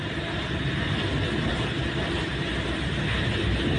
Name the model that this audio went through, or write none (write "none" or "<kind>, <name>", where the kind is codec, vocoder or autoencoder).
none